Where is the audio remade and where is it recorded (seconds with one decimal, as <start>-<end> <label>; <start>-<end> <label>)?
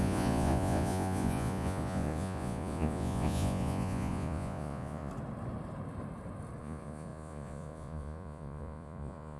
0.0-5.1 remade; 5.1-6.6 recorded; 6.6-9.4 remade